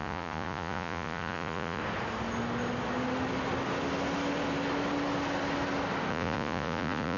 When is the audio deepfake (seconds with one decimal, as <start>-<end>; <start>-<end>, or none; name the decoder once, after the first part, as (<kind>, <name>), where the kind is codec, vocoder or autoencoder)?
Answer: 0.0-1.8 (vocoder, Vocos); 6.1-7.2